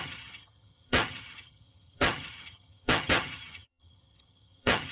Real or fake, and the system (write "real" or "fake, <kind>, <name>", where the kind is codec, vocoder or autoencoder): fake, vocoder, HiFi-GAN